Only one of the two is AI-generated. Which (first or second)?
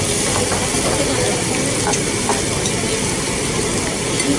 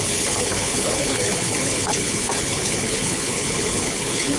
second